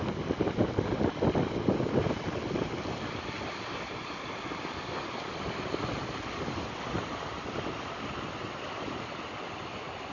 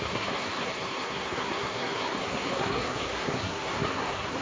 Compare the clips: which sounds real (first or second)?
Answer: first